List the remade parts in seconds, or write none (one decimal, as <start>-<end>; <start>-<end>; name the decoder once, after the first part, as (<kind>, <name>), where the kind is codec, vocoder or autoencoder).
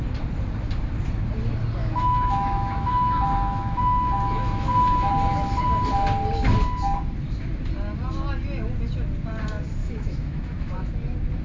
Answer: 1.8-5.1 (autoencoder, DAC-VAE); 9.8-10.9